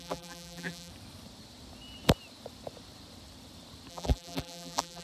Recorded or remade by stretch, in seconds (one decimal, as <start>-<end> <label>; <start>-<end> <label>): 0.0-0.9 remade; 0.9-3.9 recorded; 3.9-5.0 remade